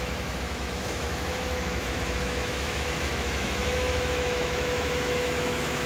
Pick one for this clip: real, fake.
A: fake